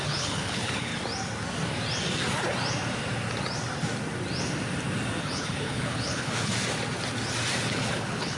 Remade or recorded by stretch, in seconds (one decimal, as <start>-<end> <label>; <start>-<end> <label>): 0.0-0.9 remade; 0.9-5.2 recorded; 5.2-6.5 remade; 6.5-7.7 recorded; 7.7-8.4 remade